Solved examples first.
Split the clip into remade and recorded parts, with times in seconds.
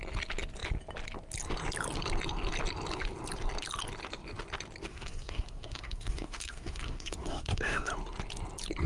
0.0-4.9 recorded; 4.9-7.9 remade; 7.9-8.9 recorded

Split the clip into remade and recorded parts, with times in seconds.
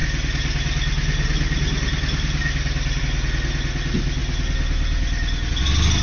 0.0-6.0 recorded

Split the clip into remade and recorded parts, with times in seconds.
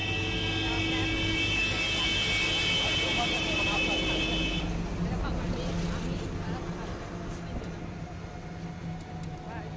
0.0-9.8 recorded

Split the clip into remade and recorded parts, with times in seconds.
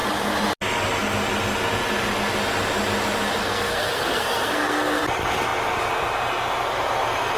0.0-3.4 recorded; 3.4-5.0 remade; 5.0-7.4 recorded